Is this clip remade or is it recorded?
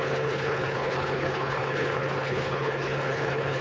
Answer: remade